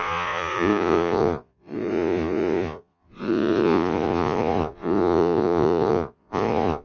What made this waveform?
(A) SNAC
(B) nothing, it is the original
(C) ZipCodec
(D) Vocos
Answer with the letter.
D